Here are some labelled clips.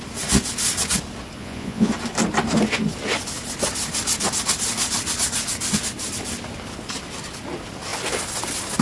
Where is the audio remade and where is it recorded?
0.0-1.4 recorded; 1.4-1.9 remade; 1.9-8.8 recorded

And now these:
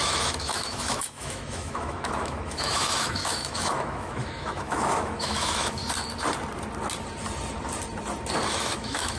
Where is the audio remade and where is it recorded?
0.0-5.8 remade; 5.8-8.5 recorded; 8.5-9.2 remade

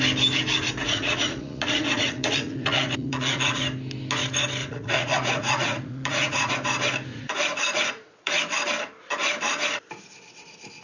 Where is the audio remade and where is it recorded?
0.0-0.8 recorded; 0.8-3.6 remade; 3.6-4.6 recorded; 4.6-6.5 remade; 6.5-7.1 recorded; 7.1-8.3 remade; 8.3-10.8 recorded

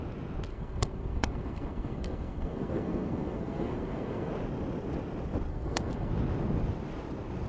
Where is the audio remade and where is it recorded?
0.0-0.5 recorded; 0.5-4.3 remade; 4.3-5.5 recorded; 5.5-6.1 remade; 6.1-7.5 recorded